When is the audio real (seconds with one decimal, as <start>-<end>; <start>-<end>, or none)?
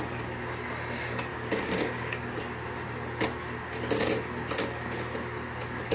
0.0-1.3; 2.4-5.9